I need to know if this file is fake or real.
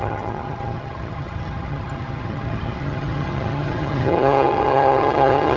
fake